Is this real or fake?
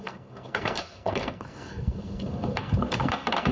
fake